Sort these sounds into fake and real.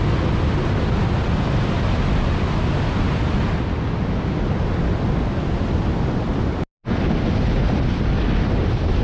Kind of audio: real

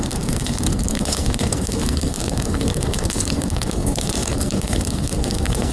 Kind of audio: fake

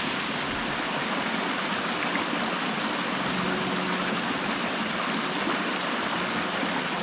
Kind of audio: real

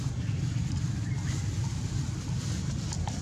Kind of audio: real